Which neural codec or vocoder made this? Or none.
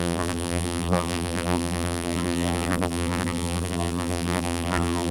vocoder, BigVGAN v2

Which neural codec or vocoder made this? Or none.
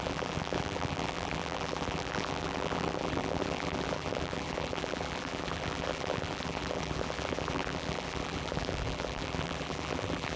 vocoder, BigVGAN v2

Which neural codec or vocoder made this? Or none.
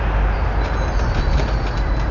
none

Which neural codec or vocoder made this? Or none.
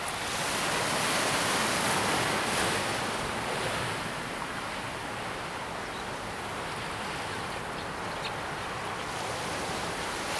none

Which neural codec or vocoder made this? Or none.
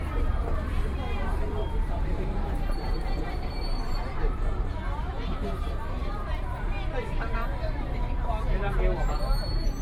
vocoder, BigVGAN v2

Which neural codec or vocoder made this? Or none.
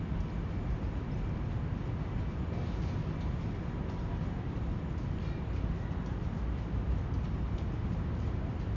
none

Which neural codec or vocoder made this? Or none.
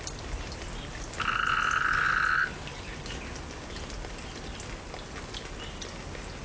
none